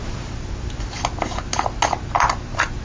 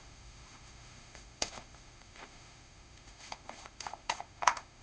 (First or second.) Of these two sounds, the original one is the first